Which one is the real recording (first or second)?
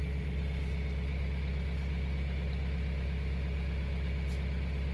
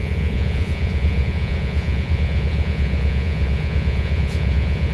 first